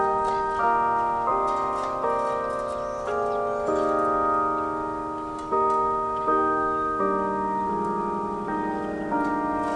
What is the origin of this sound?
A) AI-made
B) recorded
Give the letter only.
B